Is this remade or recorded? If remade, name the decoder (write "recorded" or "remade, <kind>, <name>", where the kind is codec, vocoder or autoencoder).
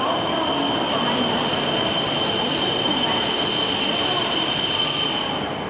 recorded